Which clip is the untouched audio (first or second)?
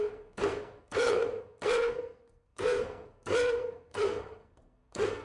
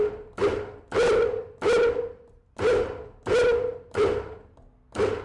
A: second